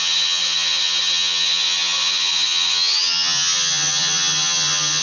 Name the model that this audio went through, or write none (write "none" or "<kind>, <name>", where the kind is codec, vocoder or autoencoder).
vocoder, HiFi-GAN